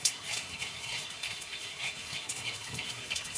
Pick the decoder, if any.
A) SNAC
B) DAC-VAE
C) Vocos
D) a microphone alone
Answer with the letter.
A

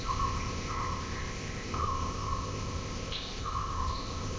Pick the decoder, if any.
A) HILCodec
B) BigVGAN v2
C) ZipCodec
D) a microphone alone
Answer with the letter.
C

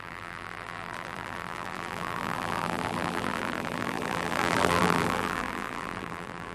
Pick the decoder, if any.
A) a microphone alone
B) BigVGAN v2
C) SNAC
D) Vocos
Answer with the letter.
B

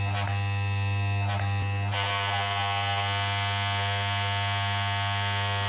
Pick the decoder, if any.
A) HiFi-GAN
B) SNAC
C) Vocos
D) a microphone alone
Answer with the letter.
D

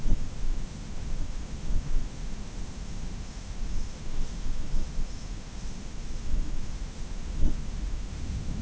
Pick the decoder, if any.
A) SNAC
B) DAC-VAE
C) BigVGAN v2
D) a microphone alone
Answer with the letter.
B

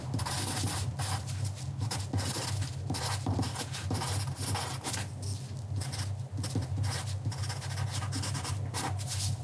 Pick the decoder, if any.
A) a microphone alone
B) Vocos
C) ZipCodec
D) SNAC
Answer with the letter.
A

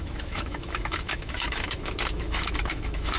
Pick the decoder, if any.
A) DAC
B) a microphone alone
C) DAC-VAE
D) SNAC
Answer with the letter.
C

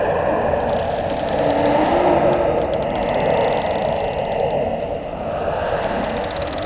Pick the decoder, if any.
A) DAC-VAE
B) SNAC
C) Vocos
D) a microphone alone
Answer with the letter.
D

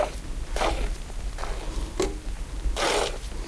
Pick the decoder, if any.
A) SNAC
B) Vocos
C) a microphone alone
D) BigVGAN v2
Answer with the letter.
C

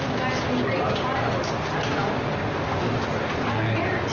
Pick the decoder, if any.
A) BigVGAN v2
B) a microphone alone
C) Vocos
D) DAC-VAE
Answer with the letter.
B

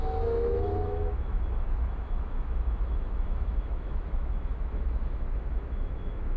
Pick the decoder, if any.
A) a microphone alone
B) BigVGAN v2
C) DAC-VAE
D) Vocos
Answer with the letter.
C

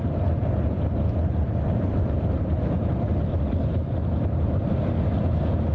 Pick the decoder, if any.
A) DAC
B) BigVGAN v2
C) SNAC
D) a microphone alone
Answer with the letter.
D